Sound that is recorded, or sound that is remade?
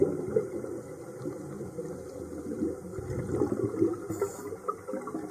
recorded